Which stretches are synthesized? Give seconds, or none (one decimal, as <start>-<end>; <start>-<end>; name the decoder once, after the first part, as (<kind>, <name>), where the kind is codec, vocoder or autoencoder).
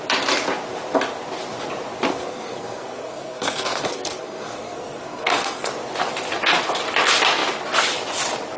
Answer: 2.1-5.7 (codec, SNAC)